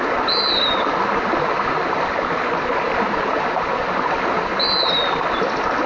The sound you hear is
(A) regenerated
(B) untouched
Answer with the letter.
B